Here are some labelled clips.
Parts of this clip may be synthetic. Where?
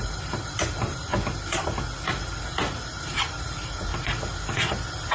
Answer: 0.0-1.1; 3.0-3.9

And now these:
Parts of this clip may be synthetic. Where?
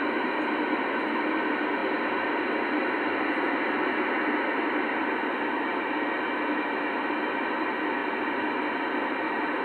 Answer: none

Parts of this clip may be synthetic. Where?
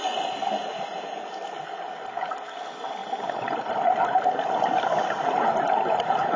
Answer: 3.0-3.6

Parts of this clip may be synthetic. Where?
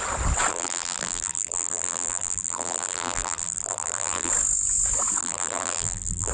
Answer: 0.5-4.3; 5.2-6.3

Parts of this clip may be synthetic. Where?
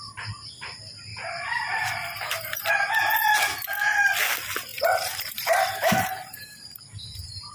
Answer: 1.1-2.7; 4.7-7.5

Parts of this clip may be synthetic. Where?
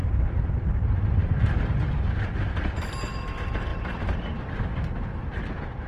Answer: 0.0-0.5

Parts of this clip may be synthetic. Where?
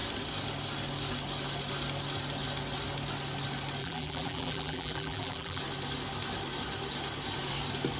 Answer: 3.8-5.6